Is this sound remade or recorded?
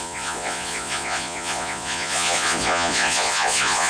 remade